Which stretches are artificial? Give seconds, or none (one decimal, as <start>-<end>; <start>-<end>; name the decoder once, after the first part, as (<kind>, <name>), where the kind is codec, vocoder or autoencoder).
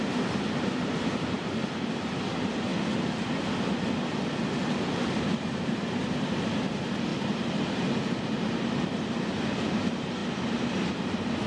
0.0-1.6 (vocoder, BigVGAN v2); 2.3-2.7; 4.5-7.1; 9.7-11.5